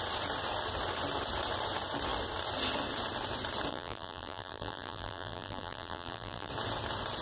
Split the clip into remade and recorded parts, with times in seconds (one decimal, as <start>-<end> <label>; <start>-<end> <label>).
0.0-3.7 recorded; 3.7-6.5 remade; 6.5-7.2 recorded